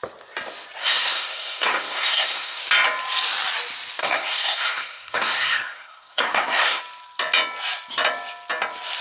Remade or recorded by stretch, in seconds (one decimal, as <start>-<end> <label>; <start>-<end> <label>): 0.0-0.8 recorded; 0.8-2.6 remade; 2.6-4.0 recorded; 4.0-6.8 remade; 6.8-9.0 recorded